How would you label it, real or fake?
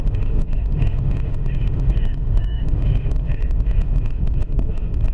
fake